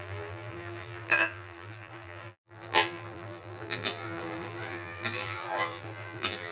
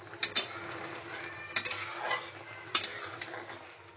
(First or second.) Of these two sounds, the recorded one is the second